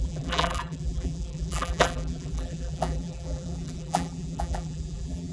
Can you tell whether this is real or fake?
fake